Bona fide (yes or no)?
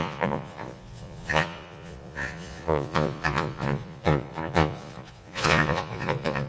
no